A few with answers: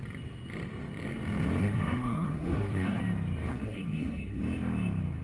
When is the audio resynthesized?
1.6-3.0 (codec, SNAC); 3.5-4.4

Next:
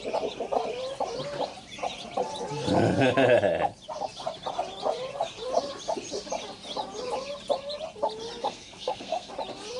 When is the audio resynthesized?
8.4-9.3 (codec, SNAC)

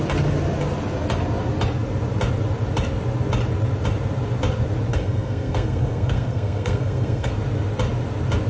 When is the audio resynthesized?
4.9-7.3 (codec, SNAC)